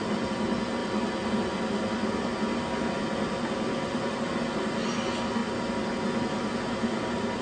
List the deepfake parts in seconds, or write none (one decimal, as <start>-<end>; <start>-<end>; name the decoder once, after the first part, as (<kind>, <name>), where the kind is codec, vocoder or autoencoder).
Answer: none